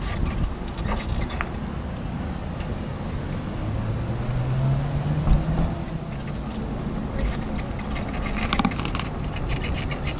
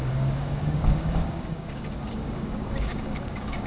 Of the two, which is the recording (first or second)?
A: first